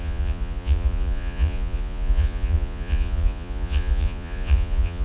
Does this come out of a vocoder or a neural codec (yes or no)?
yes